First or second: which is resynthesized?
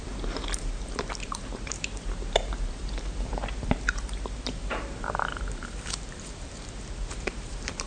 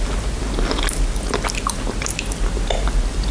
first